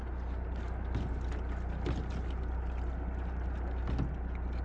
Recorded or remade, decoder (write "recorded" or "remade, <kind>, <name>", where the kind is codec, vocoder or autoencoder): recorded